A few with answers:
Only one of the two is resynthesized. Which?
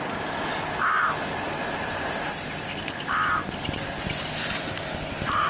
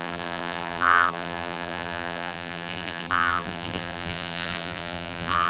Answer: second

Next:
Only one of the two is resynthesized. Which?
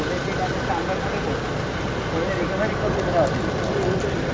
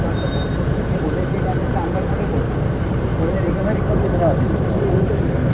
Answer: second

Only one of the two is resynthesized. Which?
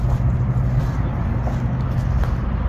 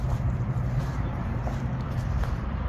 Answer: second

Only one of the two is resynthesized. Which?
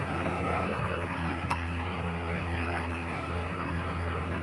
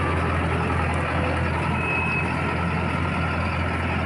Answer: first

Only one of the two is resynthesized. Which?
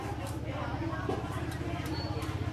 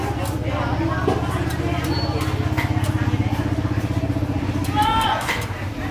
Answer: first